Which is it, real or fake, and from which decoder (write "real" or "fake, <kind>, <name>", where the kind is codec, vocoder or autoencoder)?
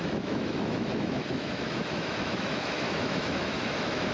fake, autoencoder, DAC-VAE